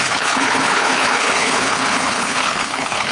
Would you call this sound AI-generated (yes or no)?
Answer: yes